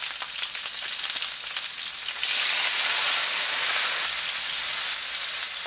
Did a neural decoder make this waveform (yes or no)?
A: no